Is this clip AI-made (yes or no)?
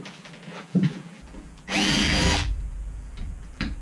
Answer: yes